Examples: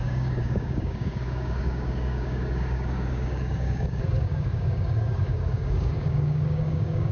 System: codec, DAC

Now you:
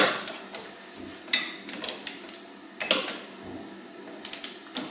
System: none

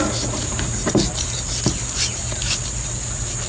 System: none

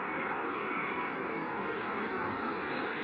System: codec, DAC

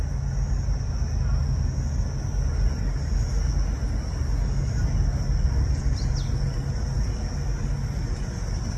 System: none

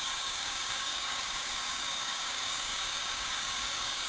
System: codec, DAC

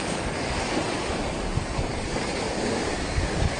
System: codec, DAC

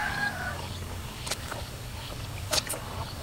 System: codec, DAC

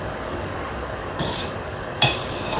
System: codec, DAC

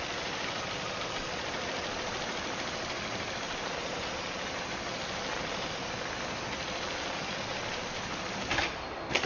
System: none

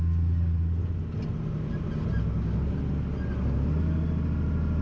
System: none